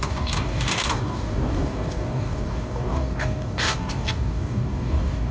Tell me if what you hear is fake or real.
fake